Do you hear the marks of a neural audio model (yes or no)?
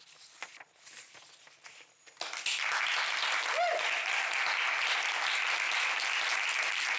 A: no